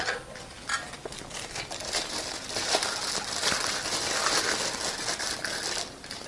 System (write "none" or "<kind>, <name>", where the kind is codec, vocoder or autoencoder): none